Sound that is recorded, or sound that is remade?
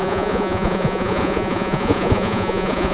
remade